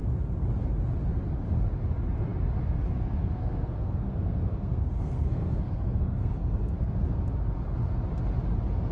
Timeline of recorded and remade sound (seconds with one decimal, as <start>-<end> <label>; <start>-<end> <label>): 0.0-3.2 recorded; 3.2-7.2 remade; 7.2-8.9 recorded